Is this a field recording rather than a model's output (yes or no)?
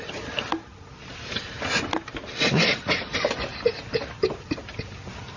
yes